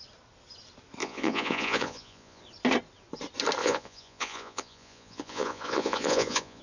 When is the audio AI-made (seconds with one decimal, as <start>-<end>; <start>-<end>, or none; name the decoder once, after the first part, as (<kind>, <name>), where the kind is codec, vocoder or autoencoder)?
1.0-2.4 (vocoder, Vocos); 3.6-6.6